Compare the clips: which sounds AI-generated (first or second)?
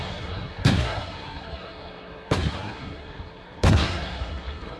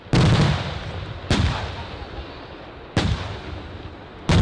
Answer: first